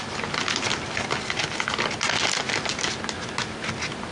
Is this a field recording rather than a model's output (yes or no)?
yes